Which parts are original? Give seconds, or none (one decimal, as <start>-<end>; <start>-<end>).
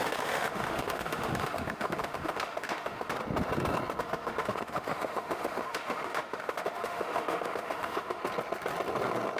3.2-4.0; 8.2-9.4